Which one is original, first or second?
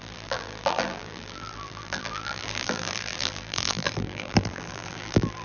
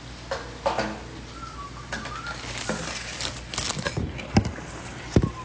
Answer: second